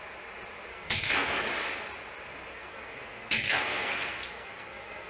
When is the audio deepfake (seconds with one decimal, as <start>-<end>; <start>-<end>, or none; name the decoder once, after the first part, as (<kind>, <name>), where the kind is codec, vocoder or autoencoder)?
0.7-1.5 (codec, SNAC); 2.5-5.1